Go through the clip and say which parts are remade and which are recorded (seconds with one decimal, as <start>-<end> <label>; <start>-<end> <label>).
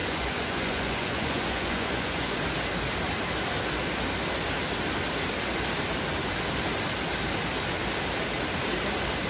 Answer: 0.0-2.4 remade; 2.4-9.3 recorded